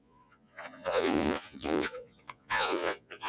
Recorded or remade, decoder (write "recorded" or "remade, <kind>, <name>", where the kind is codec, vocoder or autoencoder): remade, vocoder, Vocos